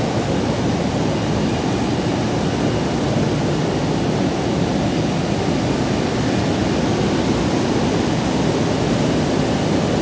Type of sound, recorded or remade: recorded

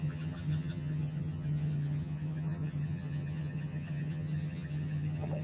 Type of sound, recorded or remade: remade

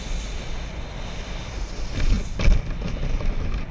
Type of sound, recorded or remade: recorded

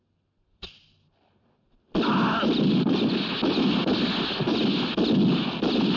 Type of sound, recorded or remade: recorded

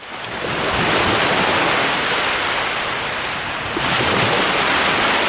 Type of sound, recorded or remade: recorded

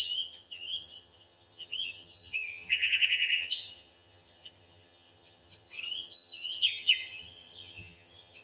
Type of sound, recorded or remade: remade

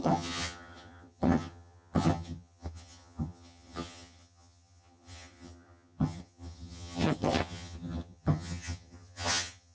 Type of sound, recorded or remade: remade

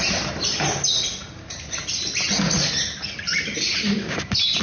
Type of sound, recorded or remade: recorded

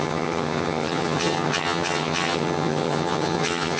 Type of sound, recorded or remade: remade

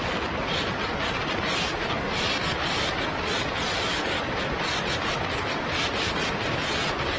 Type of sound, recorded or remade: recorded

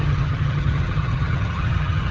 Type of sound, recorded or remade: remade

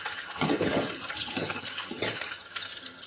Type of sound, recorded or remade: remade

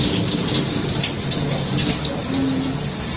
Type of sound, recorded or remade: recorded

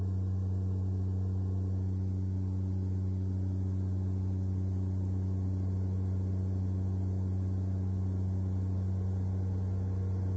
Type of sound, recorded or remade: recorded